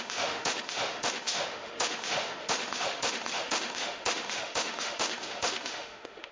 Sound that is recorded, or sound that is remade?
remade